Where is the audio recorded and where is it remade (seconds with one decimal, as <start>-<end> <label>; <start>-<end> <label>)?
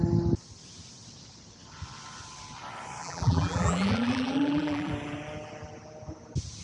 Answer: 0.0-3.0 recorded; 3.0-4.9 remade; 4.9-6.6 recorded